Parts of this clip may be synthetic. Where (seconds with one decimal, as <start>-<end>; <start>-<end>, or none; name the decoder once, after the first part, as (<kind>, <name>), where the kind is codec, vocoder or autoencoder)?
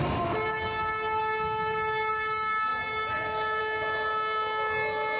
none